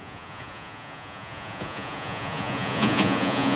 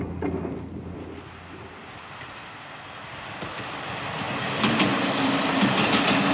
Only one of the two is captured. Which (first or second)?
second